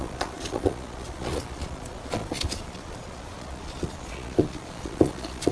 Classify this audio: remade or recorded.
remade